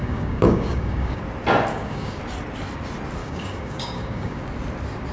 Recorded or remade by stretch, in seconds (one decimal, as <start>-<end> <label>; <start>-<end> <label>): 0.0-1.2 remade; 1.2-1.7 recorded; 1.7-2.2 remade; 2.2-3.2 recorded; 3.2-4.4 remade; 4.4-5.1 recorded